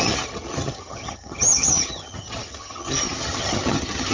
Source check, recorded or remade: remade